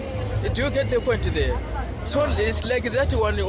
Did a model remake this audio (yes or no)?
yes